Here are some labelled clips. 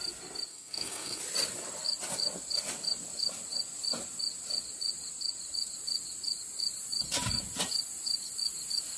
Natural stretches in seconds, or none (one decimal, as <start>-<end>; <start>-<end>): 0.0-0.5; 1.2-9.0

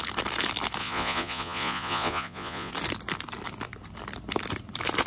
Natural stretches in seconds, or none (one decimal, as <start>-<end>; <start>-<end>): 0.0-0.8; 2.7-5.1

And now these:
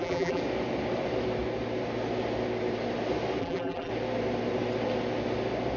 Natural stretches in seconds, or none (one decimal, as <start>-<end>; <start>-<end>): 0.4-3.4; 3.9-5.8